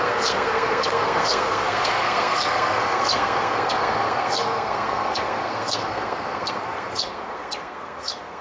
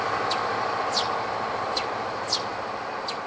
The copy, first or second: first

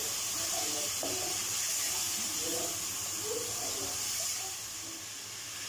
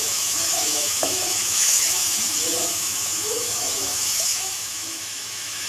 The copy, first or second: second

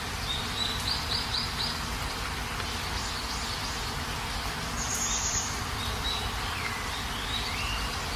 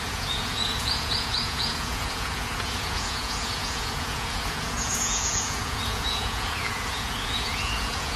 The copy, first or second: second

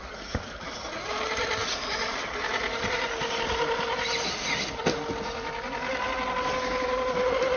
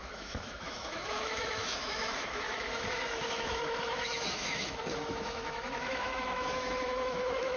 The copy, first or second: second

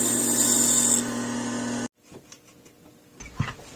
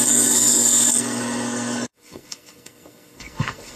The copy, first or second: second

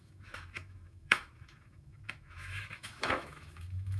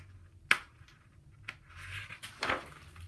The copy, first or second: first